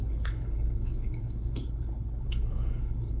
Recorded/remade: remade